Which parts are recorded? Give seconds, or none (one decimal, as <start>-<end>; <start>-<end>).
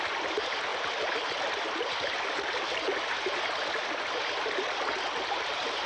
0.0-5.9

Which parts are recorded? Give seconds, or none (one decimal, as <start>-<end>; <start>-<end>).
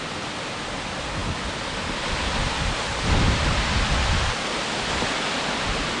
0.0-6.0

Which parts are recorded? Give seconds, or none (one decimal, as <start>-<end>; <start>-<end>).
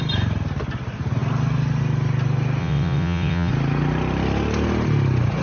0.0-2.6; 3.5-5.4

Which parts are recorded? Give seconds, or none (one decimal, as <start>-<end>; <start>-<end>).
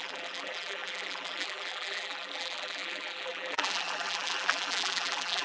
none